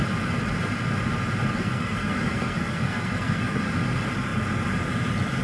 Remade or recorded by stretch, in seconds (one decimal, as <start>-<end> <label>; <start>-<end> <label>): 0.0-1.4 recorded; 1.4-3.7 remade; 3.7-5.4 recorded